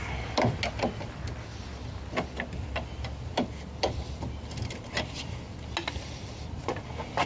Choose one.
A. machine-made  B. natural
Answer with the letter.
B